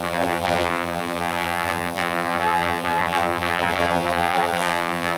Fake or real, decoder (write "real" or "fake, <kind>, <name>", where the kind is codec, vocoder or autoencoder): fake, vocoder, BigVGAN v2